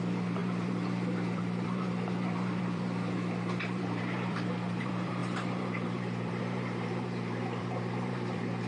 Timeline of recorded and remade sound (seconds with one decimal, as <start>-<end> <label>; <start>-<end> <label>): 0.0-8.7 remade